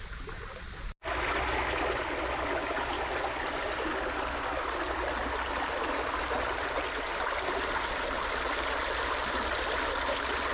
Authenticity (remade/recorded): recorded